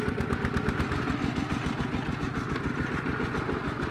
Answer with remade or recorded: recorded